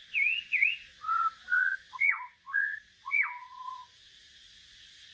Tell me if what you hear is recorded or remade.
remade